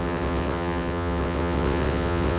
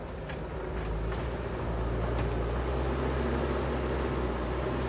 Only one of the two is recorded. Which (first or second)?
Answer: second